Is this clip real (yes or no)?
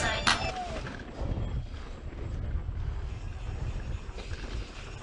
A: yes